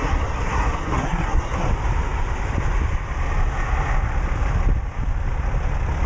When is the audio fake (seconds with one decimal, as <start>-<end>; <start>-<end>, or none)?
0.0-1.7